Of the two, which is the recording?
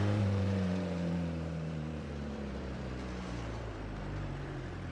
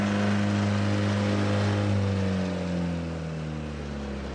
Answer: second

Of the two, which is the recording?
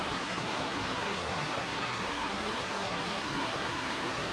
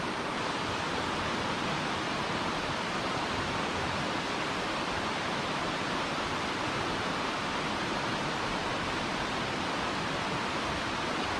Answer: second